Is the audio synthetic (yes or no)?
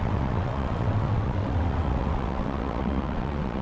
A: yes